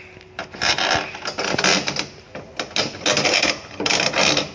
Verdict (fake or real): real